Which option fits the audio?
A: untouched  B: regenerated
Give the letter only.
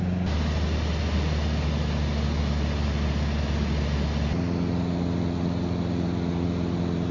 A